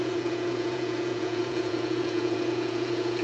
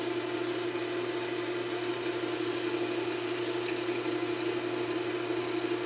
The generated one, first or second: first